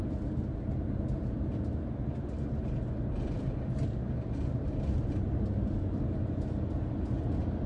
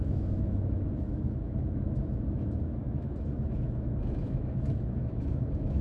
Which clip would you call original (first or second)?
first